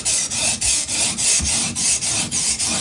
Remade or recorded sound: remade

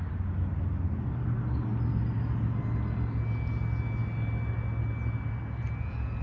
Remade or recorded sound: recorded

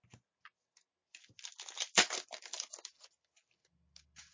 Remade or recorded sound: recorded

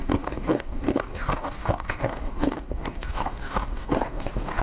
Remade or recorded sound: remade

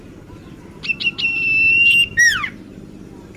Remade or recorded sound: remade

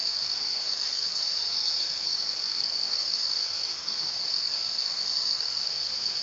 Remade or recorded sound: remade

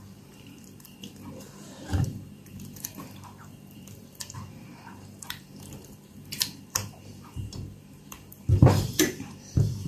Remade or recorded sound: remade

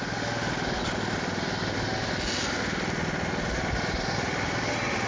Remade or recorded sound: recorded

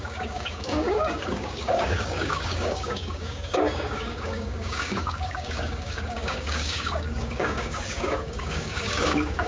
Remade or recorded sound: remade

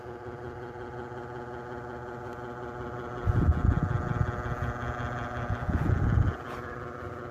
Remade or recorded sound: recorded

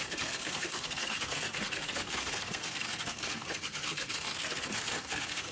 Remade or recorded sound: remade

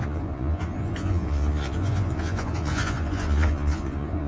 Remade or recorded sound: remade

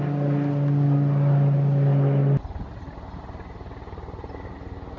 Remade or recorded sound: recorded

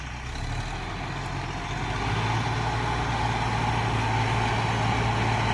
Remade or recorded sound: recorded